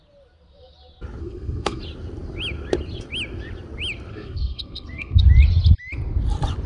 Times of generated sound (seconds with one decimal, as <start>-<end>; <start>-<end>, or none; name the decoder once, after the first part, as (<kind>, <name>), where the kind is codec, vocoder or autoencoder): 1.2-1.8 (codec, SNAC); 4.1-5.2

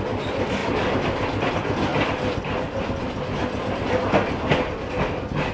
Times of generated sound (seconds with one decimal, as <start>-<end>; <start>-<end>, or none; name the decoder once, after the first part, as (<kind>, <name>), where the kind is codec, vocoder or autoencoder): none

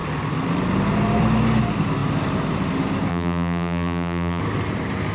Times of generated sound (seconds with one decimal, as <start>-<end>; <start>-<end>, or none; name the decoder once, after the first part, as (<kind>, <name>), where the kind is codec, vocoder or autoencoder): 3.1-4.4 (vocoder, BigVGAN v2)

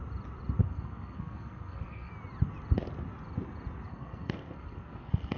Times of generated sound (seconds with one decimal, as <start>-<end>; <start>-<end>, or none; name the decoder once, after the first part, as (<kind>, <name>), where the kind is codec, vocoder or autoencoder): 0.6-2.1 (codec, SNAC); 3.9-5.4

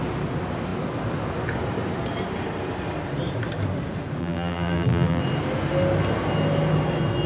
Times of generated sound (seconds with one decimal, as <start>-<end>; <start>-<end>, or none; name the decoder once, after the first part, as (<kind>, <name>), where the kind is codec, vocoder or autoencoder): 4.2-5.2 (vocoder, BigVGAN v2)